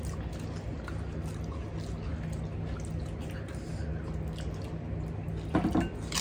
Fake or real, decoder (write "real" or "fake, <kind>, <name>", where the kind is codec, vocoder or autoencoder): real